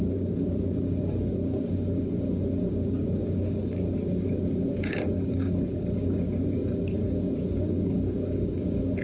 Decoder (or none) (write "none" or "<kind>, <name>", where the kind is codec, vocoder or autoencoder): codec, DAC